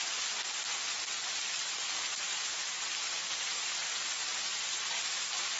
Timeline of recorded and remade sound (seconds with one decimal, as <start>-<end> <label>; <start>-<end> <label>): 0.0-5.6 recorded